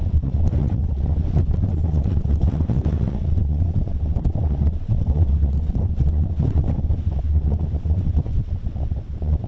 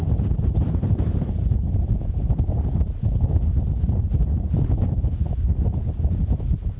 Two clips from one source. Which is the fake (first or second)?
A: first